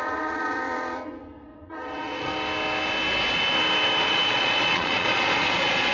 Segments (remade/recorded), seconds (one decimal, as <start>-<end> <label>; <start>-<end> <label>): 0.0-2.3 remade; 2.3-4.0 recorded; 4.0-5.9 remade